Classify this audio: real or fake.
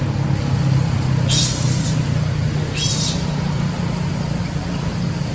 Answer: real